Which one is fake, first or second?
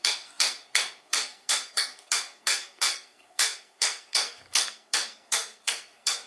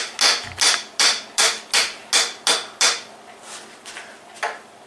first